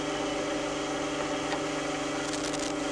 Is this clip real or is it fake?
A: real